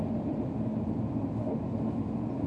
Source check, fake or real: real